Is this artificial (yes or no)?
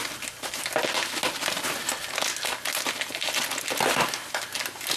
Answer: no